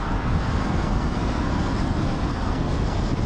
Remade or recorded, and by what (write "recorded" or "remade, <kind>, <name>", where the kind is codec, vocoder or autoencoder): remade, codec, SNAC